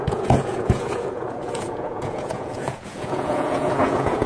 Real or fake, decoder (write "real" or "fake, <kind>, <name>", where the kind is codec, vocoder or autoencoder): fake, vocoder, Vocos